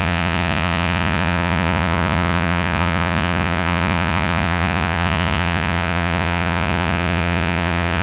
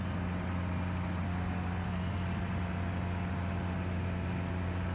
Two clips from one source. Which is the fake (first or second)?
first